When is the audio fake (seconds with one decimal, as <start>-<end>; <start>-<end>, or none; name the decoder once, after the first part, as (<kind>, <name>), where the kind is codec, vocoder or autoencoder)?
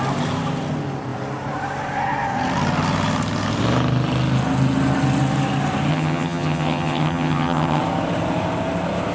5.9-7.8 (vocoder, HiFi-GAN)